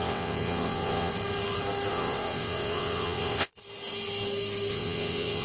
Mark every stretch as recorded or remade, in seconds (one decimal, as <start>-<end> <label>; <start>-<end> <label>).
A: 0.0-1.1 remade; 1.1-1.9 recorded; 1.9-3.5 remade; 3.5-4.7 recorded; 4.7-5.4 remade